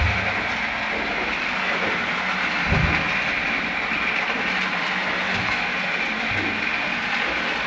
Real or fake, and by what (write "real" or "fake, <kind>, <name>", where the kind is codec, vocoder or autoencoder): real